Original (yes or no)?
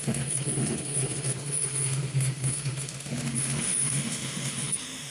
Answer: no